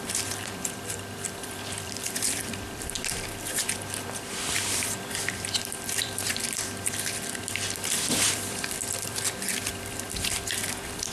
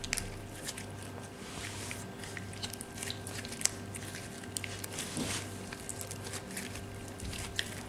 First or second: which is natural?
second